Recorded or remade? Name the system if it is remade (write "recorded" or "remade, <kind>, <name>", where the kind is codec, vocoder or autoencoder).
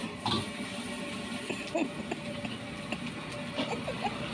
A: recorded